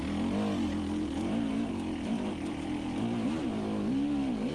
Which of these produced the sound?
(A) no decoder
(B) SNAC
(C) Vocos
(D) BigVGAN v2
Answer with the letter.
A